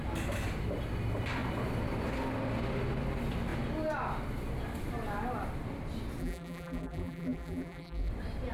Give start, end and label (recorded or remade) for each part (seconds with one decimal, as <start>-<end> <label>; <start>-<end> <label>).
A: 0.0-6.2 recorded; 6.2-8.1 remade; 8.1-8.5 recorded